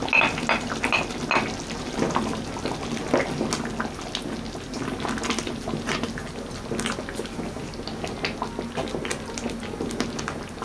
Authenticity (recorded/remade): recorded